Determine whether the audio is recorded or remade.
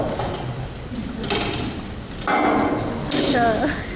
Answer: recorded